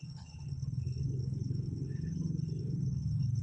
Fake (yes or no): yes